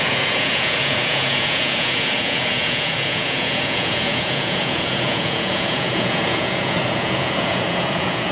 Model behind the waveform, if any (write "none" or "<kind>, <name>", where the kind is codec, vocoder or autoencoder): vocoder, Vocos